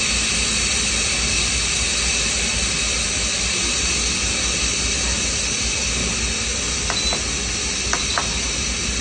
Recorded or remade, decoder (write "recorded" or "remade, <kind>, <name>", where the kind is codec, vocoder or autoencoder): recorded